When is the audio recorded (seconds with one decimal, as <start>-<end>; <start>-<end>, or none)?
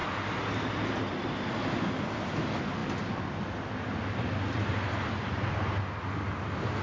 0.0-6.8